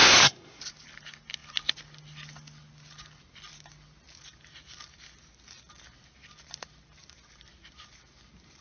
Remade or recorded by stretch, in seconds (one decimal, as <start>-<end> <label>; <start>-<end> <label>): 0.0-0.6 remade; 0.6-8.6 recorded

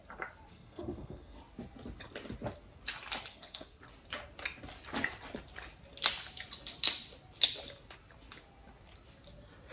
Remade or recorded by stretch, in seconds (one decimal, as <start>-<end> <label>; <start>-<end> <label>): 0.0-0.5 recorded; 0.5-1.4 remade; 1.4-3.3 recorded; 3.3-3.8 remade; 3.8-9.7 recorded